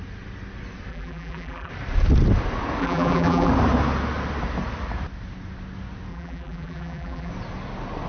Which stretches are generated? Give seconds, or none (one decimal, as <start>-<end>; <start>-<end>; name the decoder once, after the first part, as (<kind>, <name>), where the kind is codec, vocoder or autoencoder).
0.9-1.7 (vocoder, BigVGAN v2); 2.8-3.5; 6.1-7.3